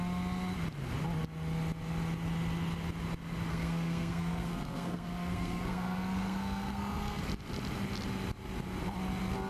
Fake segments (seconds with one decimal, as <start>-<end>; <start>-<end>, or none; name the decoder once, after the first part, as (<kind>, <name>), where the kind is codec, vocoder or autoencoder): 3.5-7.2 (codec, SNAC)